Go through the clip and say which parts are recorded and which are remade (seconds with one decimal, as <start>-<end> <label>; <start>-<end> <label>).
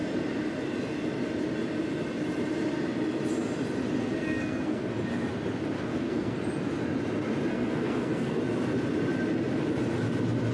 0.0-4.0 recorded; 4.0-4.9 remade; 4.9-5.9 recorded; 5.9-6.4 remade; 6.4-7.5 recorded; 7.5-8.4 remade; 8.4-10.5 recorded